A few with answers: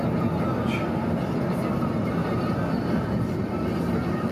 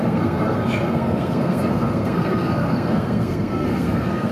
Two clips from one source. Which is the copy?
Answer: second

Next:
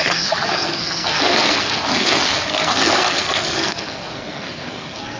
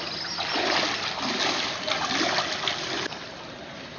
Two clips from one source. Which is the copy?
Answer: first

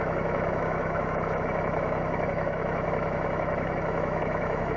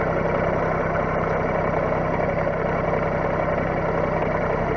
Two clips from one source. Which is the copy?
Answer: first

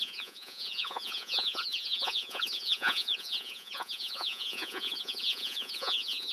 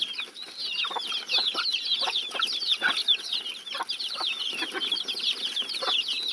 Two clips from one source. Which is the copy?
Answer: first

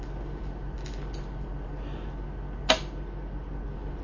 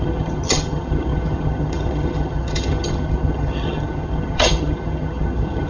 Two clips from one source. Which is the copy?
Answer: second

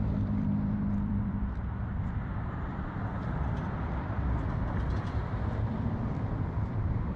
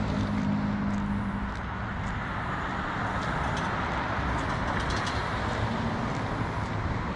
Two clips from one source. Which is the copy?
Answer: first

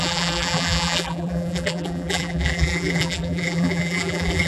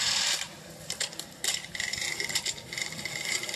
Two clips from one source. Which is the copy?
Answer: first